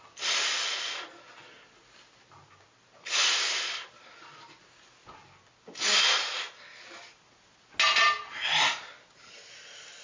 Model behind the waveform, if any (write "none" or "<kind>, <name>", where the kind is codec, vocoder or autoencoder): none